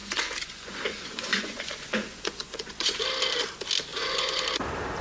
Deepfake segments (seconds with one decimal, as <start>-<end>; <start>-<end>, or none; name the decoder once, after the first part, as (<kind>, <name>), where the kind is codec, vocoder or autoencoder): 0.0-3.0 (vocoder, Vocos); 3.9-4.4